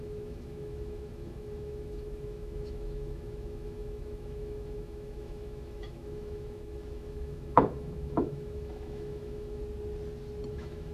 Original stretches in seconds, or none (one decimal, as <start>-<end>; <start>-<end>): 9.6-10.5